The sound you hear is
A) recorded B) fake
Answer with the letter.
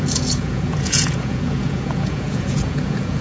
B